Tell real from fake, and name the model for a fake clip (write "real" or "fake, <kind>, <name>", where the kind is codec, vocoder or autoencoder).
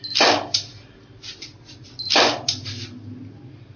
real